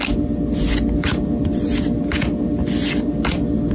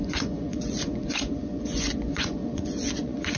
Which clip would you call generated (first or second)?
second